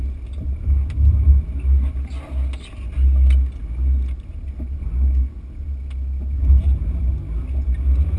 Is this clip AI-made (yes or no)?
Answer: no